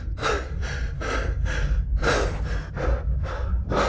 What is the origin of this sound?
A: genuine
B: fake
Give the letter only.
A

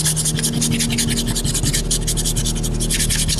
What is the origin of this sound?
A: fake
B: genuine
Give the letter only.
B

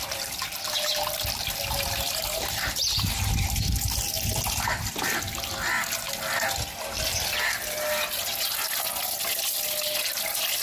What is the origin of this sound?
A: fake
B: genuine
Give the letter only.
B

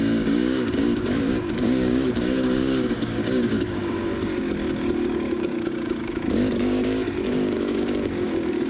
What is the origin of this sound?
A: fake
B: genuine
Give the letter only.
A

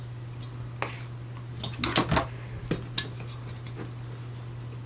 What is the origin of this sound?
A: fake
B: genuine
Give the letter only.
B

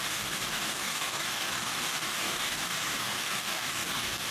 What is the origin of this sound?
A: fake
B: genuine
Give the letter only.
A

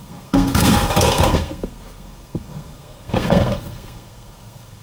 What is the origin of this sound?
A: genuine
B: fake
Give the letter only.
B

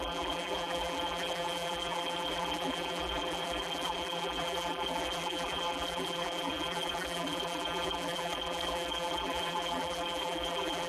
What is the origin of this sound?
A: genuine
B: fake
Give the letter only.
B